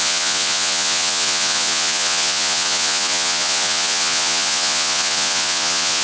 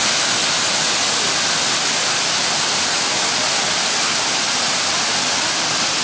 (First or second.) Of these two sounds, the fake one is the first